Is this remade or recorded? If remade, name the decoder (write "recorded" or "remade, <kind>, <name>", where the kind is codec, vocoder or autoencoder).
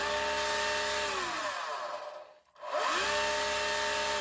recorded